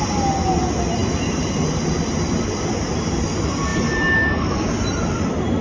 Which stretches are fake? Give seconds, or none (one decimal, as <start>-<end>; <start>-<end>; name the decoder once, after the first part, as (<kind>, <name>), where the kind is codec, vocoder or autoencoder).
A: none